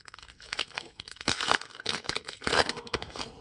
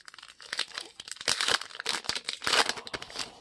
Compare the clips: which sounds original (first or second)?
second